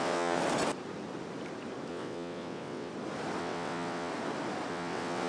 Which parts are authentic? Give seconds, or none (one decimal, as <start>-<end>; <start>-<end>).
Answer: 0.4-1.9; 2.9-3.4; 4.1-4.7